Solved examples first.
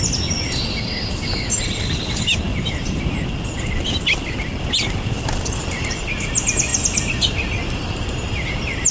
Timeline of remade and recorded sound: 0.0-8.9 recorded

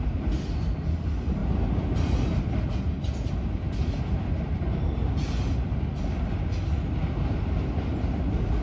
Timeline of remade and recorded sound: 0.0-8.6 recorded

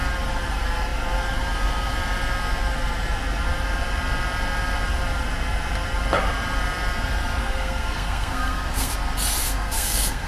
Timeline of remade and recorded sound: 0.0-7.4 recorded; 7.4-8.9 remade; 8.9-9.4 recorded; 9.4-10.3 remade

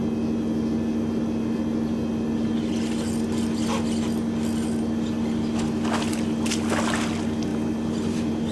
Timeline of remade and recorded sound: 0.0-7.5 recorded; 7.5-8.5 remade

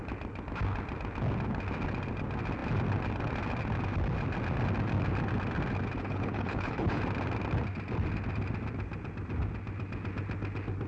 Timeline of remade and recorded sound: 0.0-6.0 recorded; 6.0-7.0 remade; 7.0-10.9 recorded